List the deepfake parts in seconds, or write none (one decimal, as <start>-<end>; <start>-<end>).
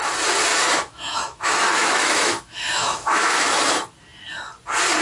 0.5-3.5